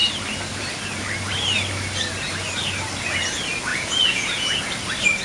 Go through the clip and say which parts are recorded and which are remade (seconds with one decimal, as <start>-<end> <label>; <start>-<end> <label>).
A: 0.0-3.7 recorded; 3.7-4.6 remade; 4.6-5.2 recorded